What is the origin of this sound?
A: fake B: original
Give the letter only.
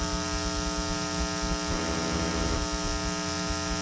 B